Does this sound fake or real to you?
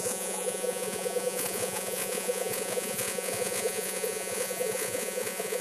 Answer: fake